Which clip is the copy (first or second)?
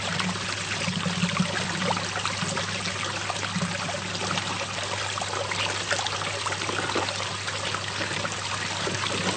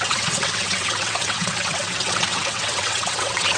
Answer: second